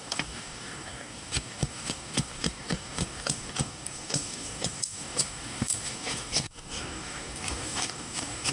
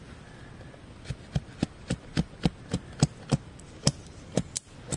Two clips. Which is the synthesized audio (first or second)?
first